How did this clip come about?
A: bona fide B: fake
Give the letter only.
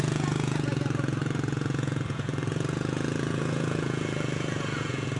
B